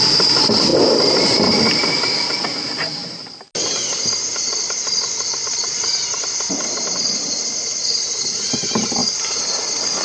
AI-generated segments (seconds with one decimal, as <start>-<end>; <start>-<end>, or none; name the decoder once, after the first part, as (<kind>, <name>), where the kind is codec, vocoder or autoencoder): none